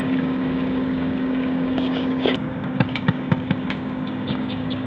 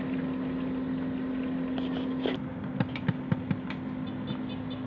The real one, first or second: second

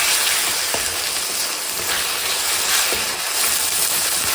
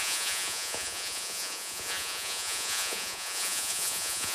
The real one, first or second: first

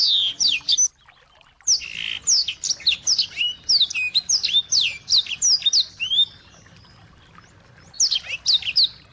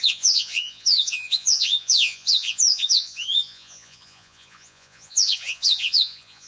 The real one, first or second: first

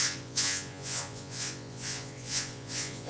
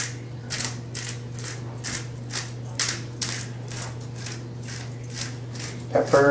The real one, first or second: second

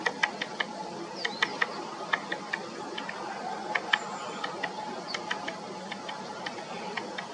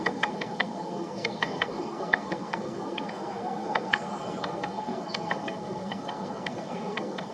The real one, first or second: first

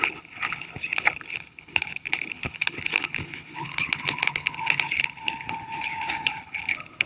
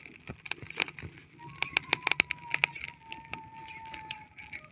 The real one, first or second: second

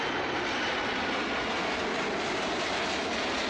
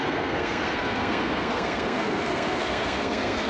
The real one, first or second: first